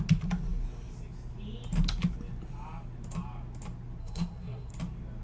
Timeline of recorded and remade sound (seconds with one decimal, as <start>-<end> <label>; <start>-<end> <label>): 0.0-4.0 recorded; 4.0-4.7 remade; 4.7-5.2 recorded